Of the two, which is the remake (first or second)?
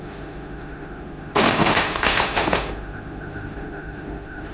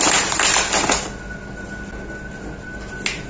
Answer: first